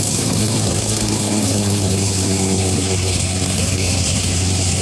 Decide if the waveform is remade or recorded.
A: remade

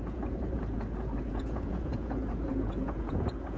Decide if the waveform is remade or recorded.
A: remade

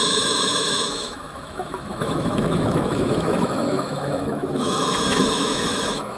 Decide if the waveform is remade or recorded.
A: remade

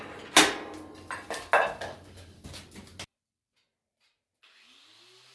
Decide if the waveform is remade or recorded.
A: recorded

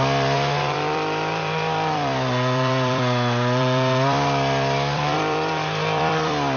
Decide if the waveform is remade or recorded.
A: remade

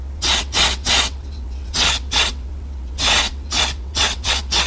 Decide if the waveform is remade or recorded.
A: remade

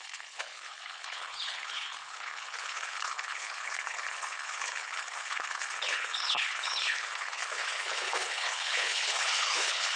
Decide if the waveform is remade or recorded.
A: remade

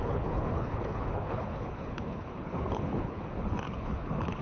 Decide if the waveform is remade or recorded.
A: remade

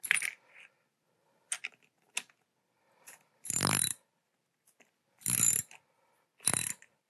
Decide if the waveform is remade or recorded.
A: recorded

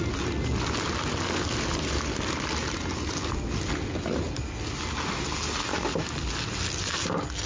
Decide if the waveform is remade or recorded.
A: recorded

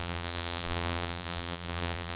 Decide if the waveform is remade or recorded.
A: remade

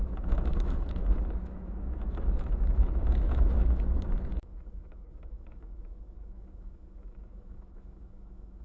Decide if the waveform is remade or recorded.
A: remade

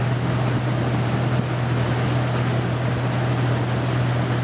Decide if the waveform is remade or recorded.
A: recorded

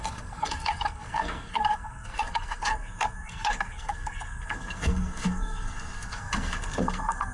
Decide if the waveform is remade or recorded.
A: remade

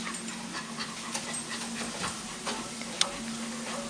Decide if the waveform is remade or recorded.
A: recorded